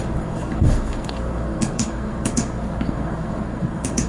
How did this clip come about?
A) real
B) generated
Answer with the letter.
B